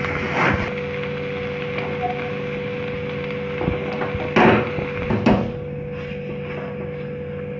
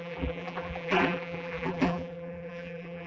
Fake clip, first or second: second